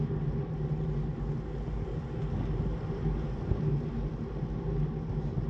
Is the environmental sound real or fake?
real